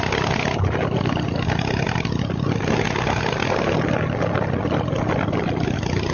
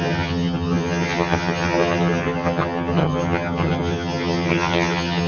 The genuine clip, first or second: first